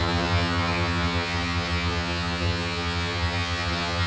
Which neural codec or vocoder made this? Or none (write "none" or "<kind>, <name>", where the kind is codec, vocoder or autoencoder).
vocoder, HiFi-GAN